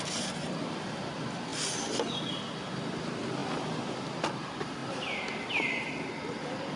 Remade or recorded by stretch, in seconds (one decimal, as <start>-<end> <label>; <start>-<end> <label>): 0.0-6.8 recorded